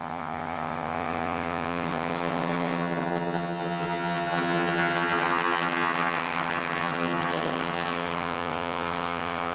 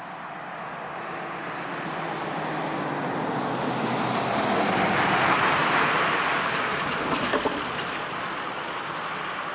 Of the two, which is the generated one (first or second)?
first